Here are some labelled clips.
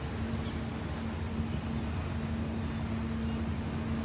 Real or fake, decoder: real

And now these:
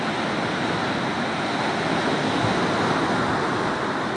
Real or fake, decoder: real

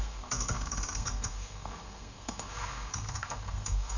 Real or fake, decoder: fake, codec, SNAC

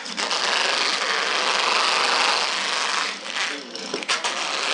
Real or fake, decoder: real